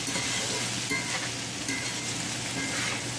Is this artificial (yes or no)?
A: no